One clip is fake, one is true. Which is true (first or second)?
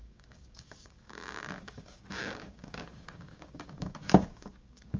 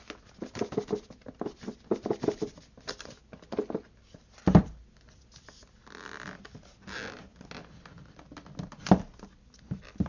second